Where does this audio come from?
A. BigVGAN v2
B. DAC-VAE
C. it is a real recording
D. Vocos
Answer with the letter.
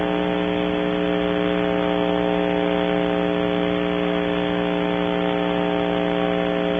C